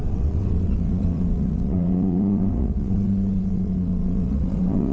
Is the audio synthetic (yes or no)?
yes